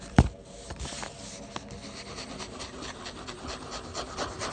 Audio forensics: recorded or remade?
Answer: recorded